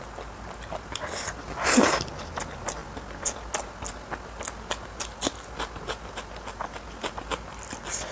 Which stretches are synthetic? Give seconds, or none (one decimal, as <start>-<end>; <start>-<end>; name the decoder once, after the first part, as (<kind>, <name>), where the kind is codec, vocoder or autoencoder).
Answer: none